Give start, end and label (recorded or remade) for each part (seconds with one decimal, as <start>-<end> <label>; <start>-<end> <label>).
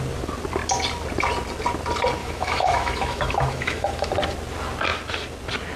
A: 0.0-2.2 recorded; 2.2-4.1 remade; 4.1-5.8 recorded